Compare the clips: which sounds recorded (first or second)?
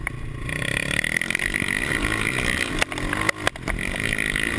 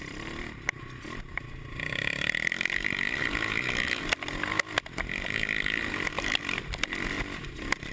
first